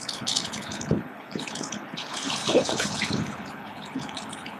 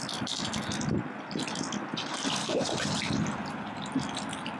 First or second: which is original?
second